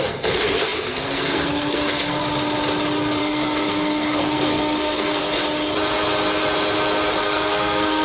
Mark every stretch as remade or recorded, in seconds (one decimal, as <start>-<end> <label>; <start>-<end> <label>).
0.0-2.2 remade; 2.2-3.2 recorded; 3.2-5.2 remade; 5.2-7.2 recorded; 7.2-8.0 remade